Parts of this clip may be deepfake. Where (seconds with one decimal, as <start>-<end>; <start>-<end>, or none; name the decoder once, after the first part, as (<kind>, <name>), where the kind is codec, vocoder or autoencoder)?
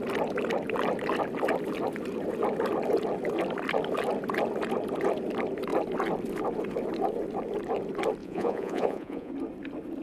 8.2-9.3 (vocoder, Vocos)